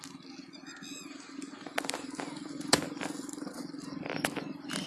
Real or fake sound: real